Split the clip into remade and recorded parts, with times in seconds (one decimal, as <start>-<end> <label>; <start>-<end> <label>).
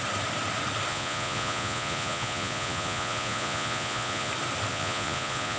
0.0-0.9 recorded; 0.9-4.3 remade; 4.3-4.7 recorded; 4.7-5.6 remade